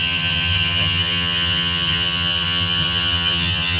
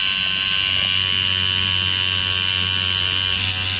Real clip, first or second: second